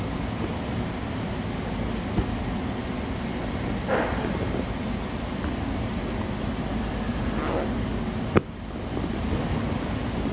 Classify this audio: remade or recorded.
recorded